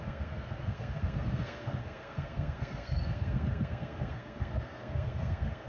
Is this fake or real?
fake